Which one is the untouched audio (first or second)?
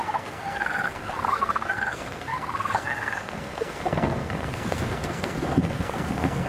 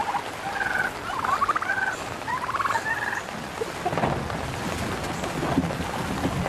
second